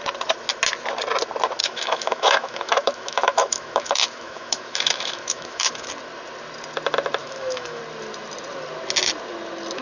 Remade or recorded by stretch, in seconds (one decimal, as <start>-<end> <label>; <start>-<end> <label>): 0.0-1.6 recorded; 1.6-5.9 remade; 5.9-7.2 recorded; 7.2-7.8 remade; 7.8-9.8 recorded